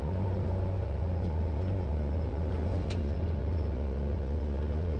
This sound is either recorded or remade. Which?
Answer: remade